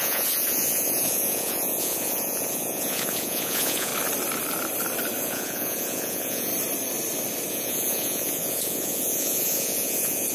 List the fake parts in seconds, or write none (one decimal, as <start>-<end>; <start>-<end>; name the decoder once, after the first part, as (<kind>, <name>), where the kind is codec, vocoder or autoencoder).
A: 0.0-3.9 (vocoder, Vocos); 5.2-6.5; 7.5-10.3